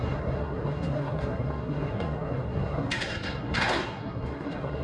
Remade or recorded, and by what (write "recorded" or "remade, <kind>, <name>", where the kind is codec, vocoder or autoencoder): remade, codec, SNAC